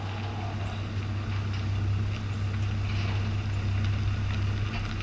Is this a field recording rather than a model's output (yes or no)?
yes